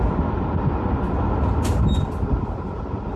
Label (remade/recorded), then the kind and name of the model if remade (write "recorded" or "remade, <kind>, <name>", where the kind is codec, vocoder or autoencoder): recorded